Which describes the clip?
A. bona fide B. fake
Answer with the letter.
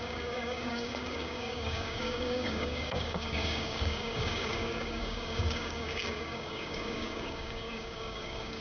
B